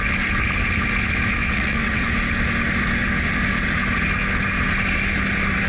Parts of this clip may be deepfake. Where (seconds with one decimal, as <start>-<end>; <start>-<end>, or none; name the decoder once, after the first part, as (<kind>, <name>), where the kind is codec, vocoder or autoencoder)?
1.4-2.1 (vocoder, WaveNeXt)